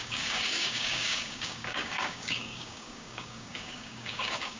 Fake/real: fake